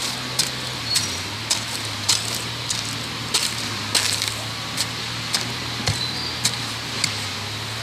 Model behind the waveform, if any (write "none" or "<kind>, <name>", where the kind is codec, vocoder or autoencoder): none